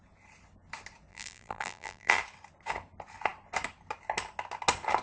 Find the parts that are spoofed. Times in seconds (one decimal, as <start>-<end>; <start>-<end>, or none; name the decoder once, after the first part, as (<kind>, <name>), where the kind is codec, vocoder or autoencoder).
1.1-2.1 (vocoder, BigVGAN v2)